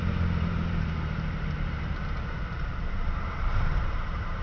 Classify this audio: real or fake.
fake